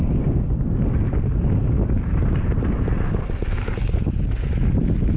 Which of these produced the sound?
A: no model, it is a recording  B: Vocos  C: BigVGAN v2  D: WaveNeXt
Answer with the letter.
A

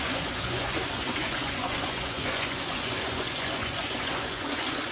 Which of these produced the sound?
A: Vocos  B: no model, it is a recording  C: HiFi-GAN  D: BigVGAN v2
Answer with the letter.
A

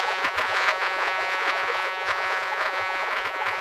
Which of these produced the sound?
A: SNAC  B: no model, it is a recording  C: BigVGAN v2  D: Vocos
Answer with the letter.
D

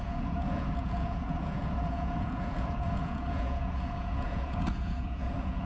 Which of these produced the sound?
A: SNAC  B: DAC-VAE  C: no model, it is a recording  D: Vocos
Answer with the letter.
D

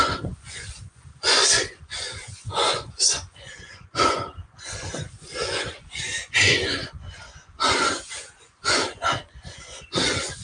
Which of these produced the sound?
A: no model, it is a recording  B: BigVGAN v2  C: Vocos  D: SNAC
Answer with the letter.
C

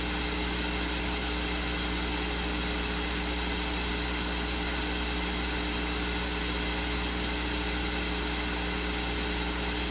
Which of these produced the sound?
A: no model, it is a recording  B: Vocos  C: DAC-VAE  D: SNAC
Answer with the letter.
A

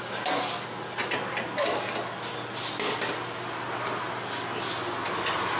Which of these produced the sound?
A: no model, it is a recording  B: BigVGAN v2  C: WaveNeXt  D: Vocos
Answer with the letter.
A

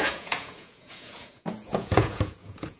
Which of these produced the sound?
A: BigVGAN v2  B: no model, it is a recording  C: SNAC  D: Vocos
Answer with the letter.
D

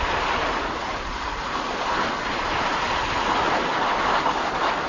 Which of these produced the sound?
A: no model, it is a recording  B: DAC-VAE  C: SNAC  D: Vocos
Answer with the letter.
A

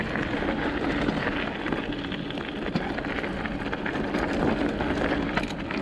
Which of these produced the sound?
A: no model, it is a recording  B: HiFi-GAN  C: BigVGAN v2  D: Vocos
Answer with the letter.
A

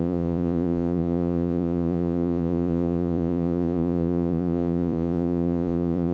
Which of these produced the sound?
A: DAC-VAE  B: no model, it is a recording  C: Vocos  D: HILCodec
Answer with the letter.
C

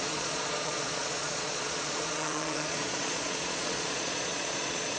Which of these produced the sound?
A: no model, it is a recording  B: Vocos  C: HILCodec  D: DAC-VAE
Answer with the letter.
B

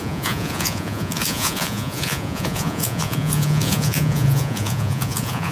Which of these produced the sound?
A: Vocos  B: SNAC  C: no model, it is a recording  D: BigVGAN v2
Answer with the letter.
A